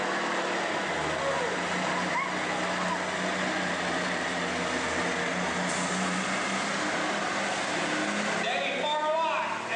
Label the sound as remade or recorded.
recorded